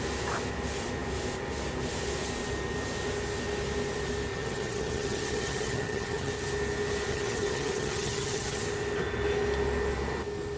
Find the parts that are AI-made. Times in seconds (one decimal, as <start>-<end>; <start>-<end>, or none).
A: 4.3-6.3; 7.1-8.6